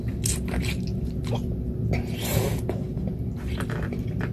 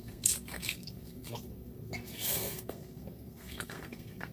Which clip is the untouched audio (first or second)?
first